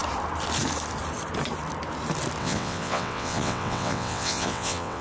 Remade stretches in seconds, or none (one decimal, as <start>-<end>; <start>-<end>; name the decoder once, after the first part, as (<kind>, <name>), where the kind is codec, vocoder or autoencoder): 2.4-5.0 (vocoder, WaveNeXt)